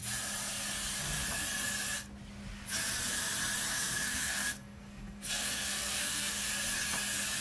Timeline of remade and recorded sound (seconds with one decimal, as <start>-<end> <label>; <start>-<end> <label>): 0.0-3.7 recorded; 3.7-6.5 remade; 6.5-7.4 recorded

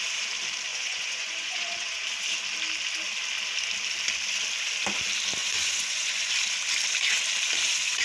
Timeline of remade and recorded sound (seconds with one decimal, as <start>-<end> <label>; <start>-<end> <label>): 0.0-0.7 recorded; 0.7-2.0 remade; 2.0-5.4 recorded; 5.4-6.3 remade; 6.3-8.0 recorded

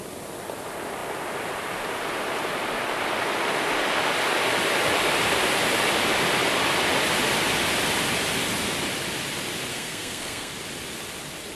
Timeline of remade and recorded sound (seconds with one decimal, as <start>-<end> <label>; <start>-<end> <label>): 0.0-9.7 recorded; 9.7-10.5 remade; 10.5-11.5 recorded

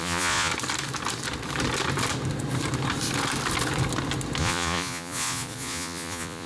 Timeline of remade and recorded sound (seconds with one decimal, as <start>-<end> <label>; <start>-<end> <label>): 0.0-0.5 remade; 0.5-4.4 recorded; 4.4-6.5 remade

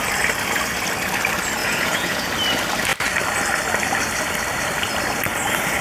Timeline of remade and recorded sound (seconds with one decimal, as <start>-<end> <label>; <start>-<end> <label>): 0.0-1.6 recorded; 1.6-2.3 remade; 2.3-5.8 recorded

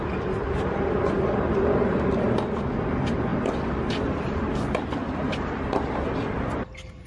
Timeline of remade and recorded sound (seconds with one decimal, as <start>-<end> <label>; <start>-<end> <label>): 0.0-7.1 recorded

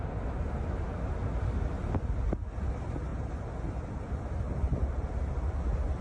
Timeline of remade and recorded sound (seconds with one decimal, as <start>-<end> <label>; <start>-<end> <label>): 0.0-6.0 recorded

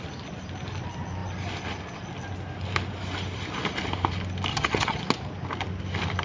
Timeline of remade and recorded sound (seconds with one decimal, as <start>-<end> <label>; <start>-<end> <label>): 0.0-4.5 recorded; 4.5-5.0 remade; 5.0-6.2 recorded